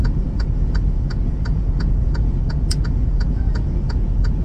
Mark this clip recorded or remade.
remade